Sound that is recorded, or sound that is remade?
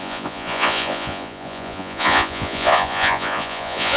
remade